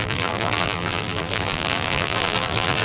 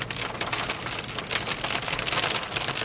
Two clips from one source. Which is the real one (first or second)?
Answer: second